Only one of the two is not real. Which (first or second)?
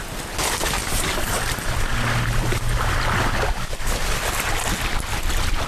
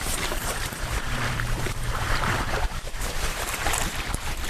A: second